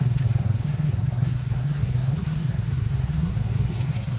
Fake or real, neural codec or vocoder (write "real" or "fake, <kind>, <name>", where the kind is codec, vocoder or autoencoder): fake, codec, SNAC